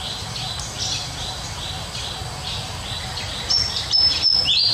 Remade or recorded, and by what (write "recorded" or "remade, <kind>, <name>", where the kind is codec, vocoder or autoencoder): recorded